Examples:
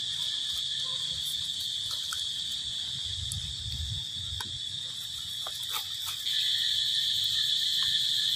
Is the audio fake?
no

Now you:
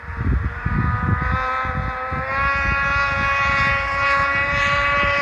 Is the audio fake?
yes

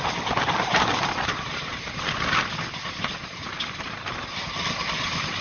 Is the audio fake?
no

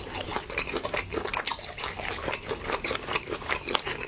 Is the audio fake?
yes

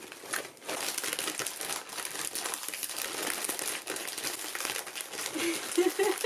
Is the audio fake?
no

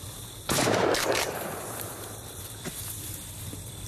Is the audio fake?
yes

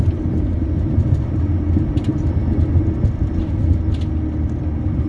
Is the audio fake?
no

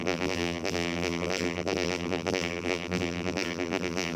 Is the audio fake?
yes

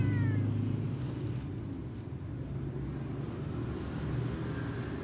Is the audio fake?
no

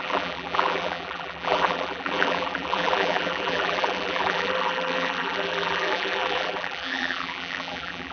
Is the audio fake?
yes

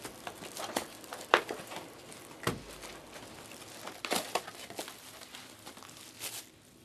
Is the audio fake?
no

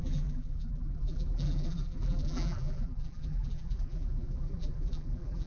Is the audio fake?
yes